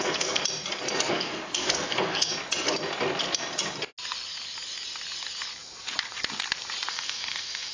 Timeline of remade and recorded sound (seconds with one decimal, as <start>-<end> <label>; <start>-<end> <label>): 0.0-0.4 remade; 0.4-1.1 recorded; 1.1-2.3 remade; 2.3-6.9 recorded; 6.9-7.7 remade